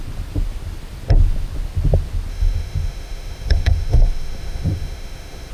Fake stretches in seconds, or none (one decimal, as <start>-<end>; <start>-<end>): 2.3-5.5